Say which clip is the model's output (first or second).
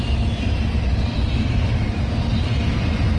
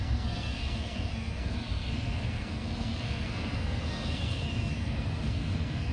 second